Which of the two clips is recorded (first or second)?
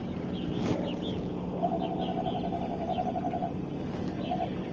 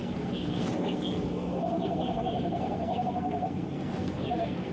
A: first